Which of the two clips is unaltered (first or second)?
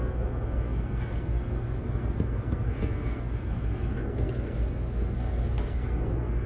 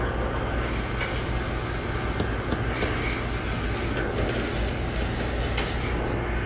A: second